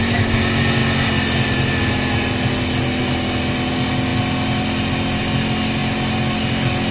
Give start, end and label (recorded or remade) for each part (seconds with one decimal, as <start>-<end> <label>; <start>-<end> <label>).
0.0-6.9 recorded